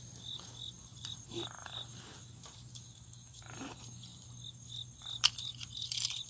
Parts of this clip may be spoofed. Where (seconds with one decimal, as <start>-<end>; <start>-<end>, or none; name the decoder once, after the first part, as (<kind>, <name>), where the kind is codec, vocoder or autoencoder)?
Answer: 2.7-3.4 (autoencoder, DAC-VAE)